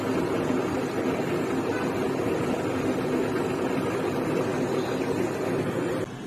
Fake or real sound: real